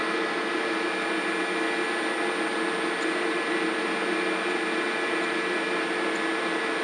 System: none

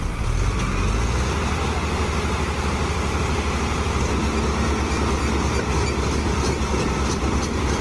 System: none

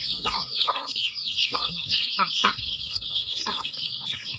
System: codec, SNAC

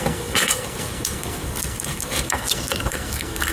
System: codec, SNAC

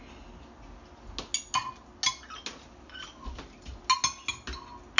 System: none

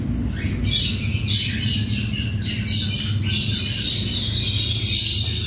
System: none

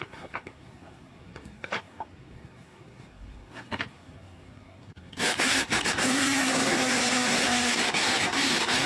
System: codec, SNAC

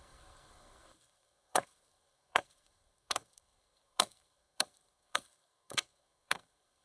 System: codec, SNAC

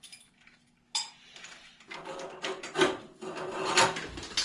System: none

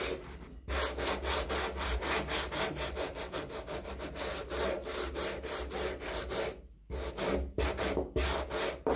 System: none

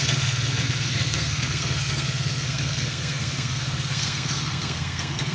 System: codec, SNAC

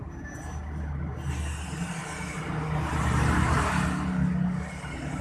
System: none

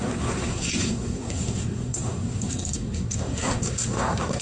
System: codec, SNAC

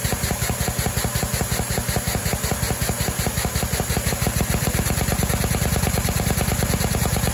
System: none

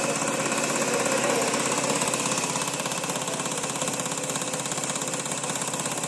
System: none